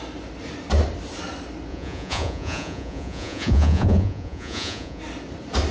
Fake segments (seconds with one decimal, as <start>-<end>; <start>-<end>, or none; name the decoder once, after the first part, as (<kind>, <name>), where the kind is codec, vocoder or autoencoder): 1.7-5.0 (vocoder, Vocos)